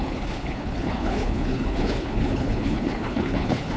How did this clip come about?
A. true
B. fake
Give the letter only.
B